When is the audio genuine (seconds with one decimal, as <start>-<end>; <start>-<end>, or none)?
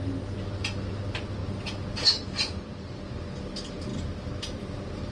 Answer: 0.0-5.1